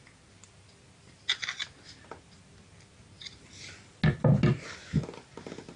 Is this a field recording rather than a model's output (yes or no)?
yes